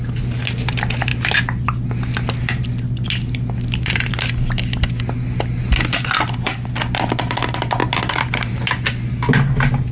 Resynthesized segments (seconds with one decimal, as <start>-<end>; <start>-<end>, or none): none